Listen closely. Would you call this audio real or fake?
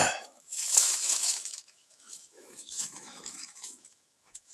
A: fake